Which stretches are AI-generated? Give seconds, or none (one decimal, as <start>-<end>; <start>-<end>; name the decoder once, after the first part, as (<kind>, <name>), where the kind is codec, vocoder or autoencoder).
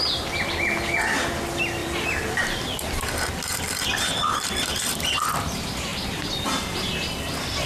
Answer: 1.8-3.0 (vocoder, BigVGAN v2); 5.9-7.7